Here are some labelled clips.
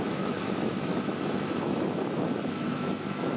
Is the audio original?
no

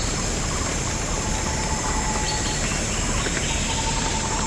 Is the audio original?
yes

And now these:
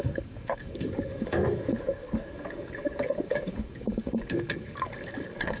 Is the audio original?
no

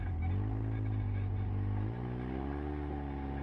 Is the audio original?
yes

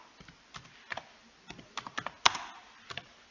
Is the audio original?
yes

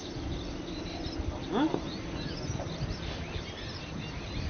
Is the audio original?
yes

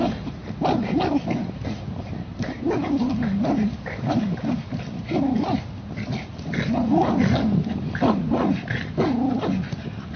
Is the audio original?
yes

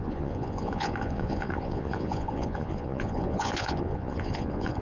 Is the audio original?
no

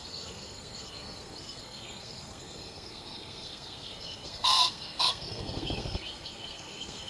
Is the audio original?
no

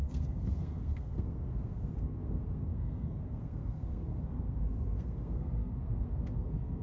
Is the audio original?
no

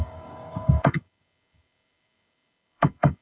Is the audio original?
no